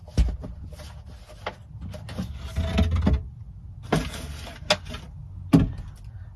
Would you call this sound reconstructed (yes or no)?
no